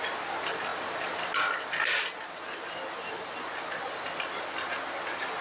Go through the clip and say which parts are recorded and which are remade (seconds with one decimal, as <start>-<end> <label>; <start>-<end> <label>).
0.0-5.4 recorded